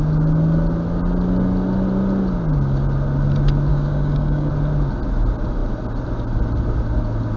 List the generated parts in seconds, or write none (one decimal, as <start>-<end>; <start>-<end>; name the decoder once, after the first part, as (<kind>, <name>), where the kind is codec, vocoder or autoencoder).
3.7-4.5 (codec, DAC)

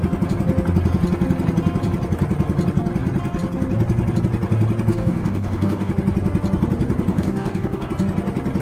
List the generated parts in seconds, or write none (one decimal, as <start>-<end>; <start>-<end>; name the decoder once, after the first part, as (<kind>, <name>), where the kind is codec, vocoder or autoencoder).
4.9-5.9 (codec, DAC); 7.1-7.9